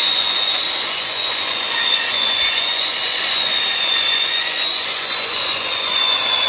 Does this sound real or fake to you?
fake